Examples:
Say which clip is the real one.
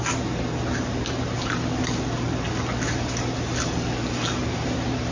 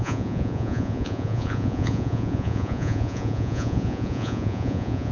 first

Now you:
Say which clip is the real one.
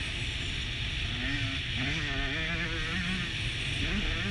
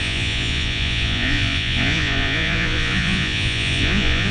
first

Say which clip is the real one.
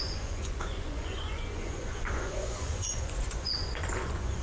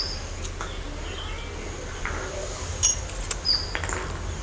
second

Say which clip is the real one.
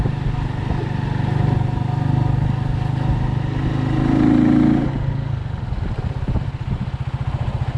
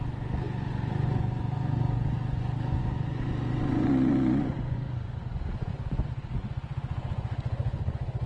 first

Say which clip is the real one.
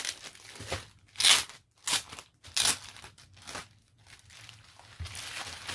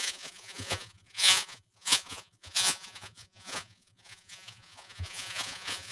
first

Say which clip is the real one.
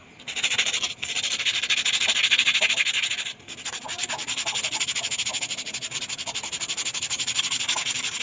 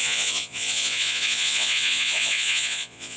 first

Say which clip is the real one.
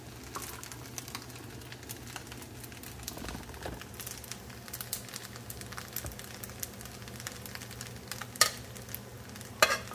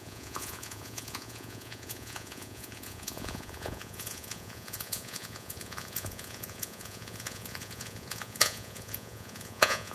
first